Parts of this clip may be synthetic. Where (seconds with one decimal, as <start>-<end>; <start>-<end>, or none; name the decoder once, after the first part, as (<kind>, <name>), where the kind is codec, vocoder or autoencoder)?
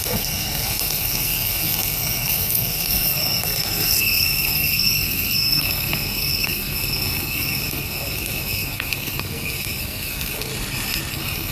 0.0-10.5 (codec, SNAC); 11.1-11.5